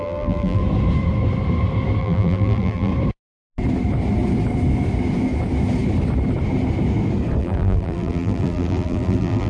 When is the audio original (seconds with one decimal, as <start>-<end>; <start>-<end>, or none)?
0.6-2.0; 2.9-7.4